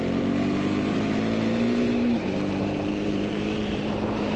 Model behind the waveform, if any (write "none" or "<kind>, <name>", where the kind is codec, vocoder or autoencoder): vocoder, BigVGAN v2